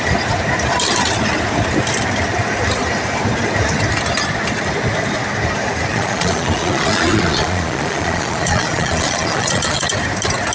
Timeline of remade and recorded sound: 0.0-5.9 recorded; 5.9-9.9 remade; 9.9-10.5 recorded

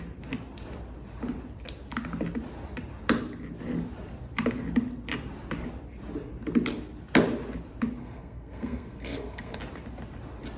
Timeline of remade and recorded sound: 0.0-8.0 recorded; 8.0-9.6 remade; 9.6-10.6 recorded

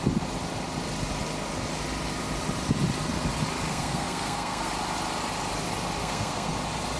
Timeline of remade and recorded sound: 0.0-3.7 recorded; 3.7-4.7 remade; 4.7-6.0 recorded; 6.0-6.5 remade; 6.5-7.0 recorded

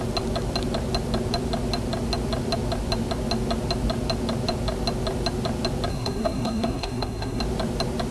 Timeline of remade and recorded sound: 0.0-5.9 recorded; 5.9-7.4 remade; 7.4-8.1 recorded

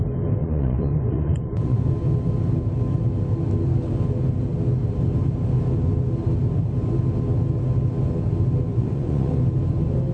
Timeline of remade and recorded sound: 0.0-0.4 recorded; 0.4-1.9 remade; 1.9-8.7 recorded; 8.7-9.4 remade; 9.4-10.1 recorded

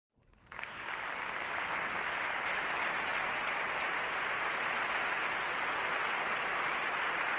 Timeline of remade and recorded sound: 0.0-0.9 remade; 0.9-7.4 recorded